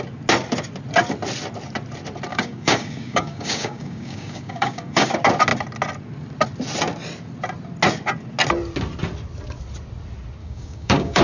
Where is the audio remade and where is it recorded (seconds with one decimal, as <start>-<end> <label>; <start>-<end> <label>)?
0.0-2.3 recorded; 2.3-5.1 remade; 5.1-10.4 recorded; 10.4-11.2 remade